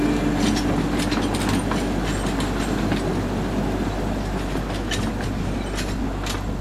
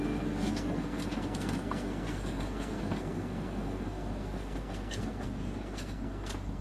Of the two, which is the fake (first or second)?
second